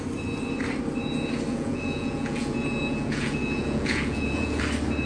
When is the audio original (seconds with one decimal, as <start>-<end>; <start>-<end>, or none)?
0.0-1.5; 4.6-5.1

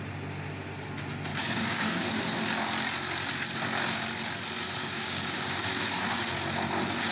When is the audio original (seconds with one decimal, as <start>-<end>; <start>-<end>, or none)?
0.0-1.3; 2.1-4.8; 6.3-7.1

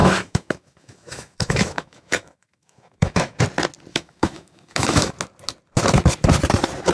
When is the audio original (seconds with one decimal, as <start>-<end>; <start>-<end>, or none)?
3.4-3.9; 5.1-6.9

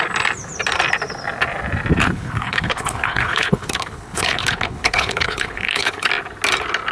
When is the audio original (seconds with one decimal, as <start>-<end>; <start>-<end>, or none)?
0.0-2.0; 6.1-6.9